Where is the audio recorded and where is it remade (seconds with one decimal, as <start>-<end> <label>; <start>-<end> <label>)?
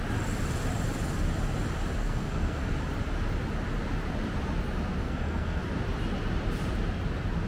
0.0-2.0 recorded; 2.0-2.7 remade; 2.7-5.0 recorded; 5.0-5.6 remade; 5.6-7.5 recorded